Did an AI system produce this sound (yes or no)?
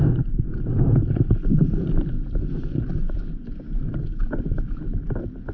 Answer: no